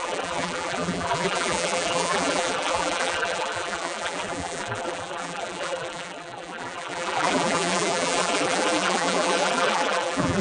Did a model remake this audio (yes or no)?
yes